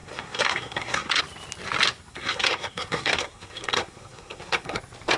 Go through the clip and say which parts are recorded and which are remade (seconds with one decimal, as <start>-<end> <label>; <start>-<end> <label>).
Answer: 0.0-1.2 remade; 1.2-2.1 recorded; 2.1-4.8 remade; 4.8-5.2 recorded